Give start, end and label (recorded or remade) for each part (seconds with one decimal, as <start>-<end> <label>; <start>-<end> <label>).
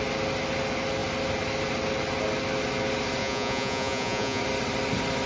0.0-3.2 recorded; 3.2-4.4 remade; 4.4-5.3 recorded